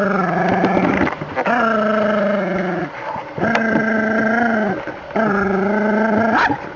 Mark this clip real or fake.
real